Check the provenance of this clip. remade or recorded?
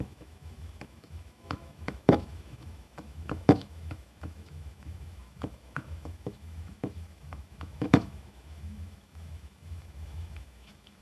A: remade